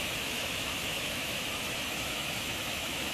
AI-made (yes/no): yes